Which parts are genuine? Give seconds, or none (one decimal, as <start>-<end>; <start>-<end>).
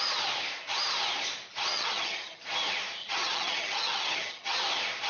0.0-1.7; 2.4-3.0; 4.6-5.1